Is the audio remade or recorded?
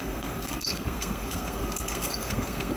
remade